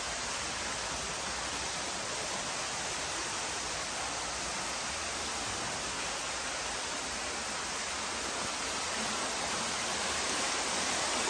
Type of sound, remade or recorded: recorded